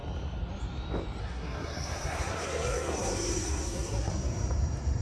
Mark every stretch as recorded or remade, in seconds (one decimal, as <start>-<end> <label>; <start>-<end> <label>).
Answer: 0.0-1.2 recorded; 1.2-4.1 remade; 4.1-5.0 recorded